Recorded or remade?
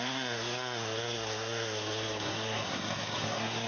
remade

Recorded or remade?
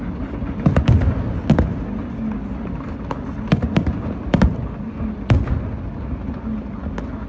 recorded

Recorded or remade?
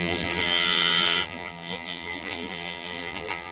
remade